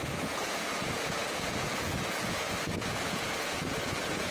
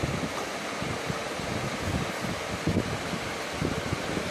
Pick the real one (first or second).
second